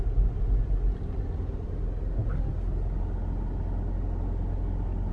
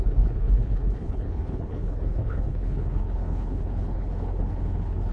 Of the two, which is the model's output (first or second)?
second